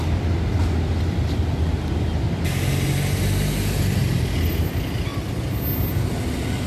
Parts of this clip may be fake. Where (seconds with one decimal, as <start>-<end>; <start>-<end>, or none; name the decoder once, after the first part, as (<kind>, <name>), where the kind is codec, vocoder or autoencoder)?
none